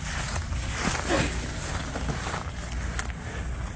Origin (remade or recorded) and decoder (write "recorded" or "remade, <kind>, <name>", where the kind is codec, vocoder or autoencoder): recorded